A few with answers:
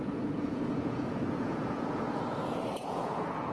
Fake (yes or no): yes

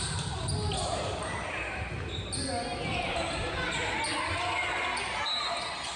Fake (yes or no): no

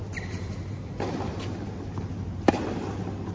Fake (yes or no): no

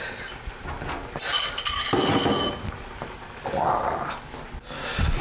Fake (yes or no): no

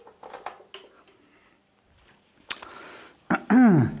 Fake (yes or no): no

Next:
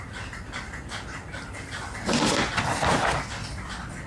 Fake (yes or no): no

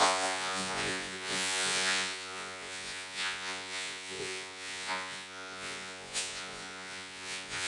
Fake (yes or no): yes